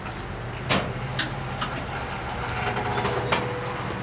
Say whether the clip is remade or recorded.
recorded